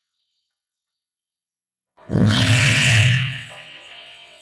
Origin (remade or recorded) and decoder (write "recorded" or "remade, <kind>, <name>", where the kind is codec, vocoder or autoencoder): remade, vocoder, WaveNeXt